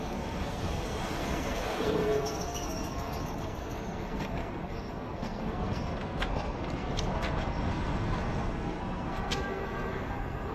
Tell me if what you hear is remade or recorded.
remade